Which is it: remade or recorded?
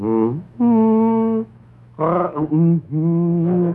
remade